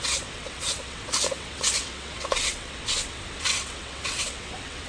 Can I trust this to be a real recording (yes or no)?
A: no